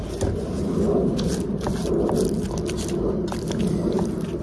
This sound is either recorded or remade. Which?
recorded